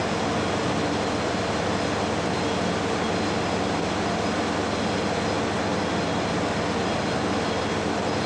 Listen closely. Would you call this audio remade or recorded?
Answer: recorded